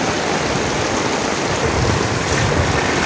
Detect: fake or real real